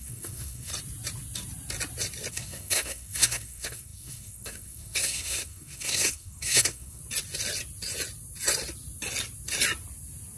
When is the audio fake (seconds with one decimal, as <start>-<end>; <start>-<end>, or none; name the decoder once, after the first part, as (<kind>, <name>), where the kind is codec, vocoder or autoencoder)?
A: 0.0-0.7 (codec, SNAC); 2.3-7.0

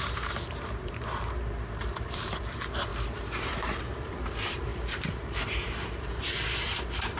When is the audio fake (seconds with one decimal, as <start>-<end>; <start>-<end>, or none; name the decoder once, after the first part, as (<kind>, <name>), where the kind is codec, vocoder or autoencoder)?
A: 0.0-2.9 (vocoder, BigVGAN v2); 3.4-7.2

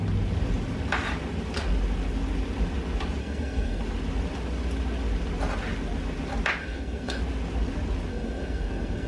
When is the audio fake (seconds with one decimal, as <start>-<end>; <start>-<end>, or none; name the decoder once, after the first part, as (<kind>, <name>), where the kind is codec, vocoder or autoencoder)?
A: 3.2-3.8 (codec, SNAC); 6.6-7.2; 8.1-9.1

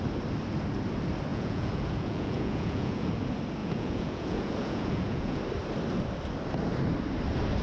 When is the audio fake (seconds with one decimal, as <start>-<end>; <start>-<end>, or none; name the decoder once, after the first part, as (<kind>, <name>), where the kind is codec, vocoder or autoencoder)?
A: 1.3-3.1 (vocoder, Vocos); 3.6-5.4